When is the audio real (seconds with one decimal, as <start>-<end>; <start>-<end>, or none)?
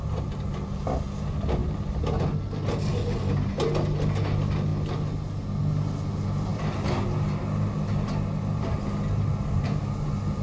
0.0-10.4